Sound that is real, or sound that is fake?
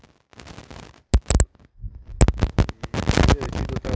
real